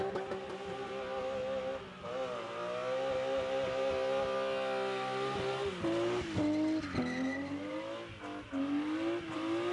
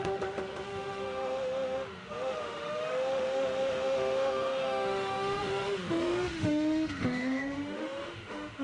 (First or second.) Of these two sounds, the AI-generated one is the second